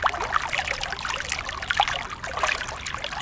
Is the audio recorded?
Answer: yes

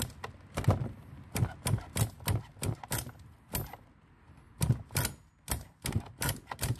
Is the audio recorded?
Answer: yes